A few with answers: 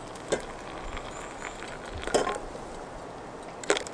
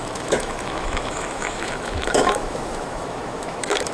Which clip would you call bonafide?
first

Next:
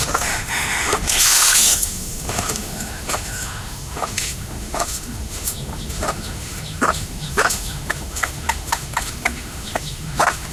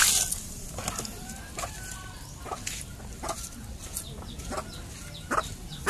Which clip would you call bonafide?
second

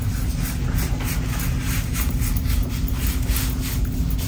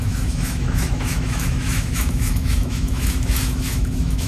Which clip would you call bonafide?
first